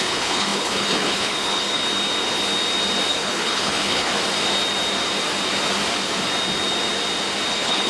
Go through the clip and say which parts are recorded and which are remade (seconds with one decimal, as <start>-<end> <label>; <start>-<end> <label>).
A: 0.0-1.8 remade; 1.8-3.1 recorded; 3.1-4.1 remade; 4.1-7.5 recorded; 7.5-7.9 remade